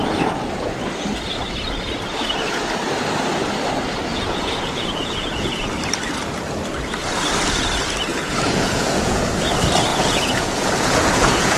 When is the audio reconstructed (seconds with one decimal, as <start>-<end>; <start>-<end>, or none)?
4.1-5.6; 8.1-9.2; 9.9-11.6